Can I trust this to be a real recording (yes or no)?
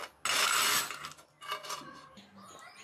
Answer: yes